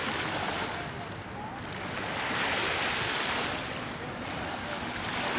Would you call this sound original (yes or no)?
yes